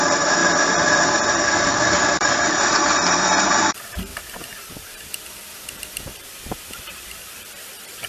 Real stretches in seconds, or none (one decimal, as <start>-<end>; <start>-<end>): none